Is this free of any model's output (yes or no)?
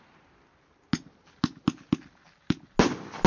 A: yes